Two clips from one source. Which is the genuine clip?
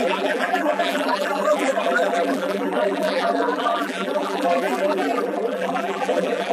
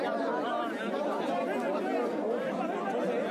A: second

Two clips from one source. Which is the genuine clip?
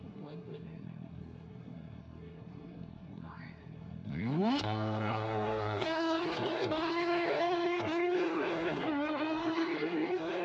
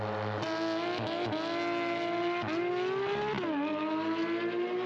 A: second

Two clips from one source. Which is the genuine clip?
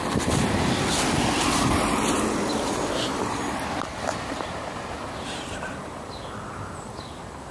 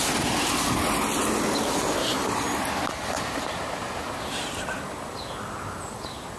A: second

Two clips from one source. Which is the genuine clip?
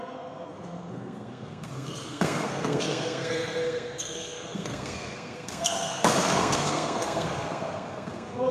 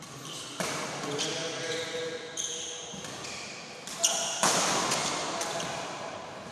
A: second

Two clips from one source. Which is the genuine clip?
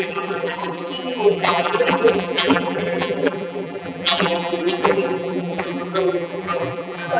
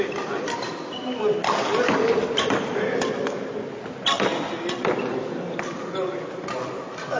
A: second